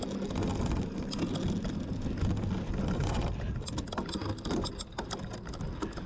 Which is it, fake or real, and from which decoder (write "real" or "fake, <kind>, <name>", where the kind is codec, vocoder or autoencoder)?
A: real